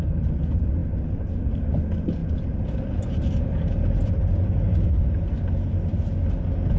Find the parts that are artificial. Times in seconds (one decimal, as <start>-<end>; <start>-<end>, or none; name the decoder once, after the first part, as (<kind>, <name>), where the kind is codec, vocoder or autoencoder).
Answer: none